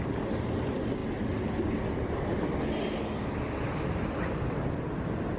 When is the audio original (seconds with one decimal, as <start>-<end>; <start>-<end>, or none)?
0.0-5.4